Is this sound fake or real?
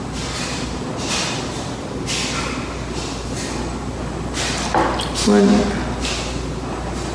real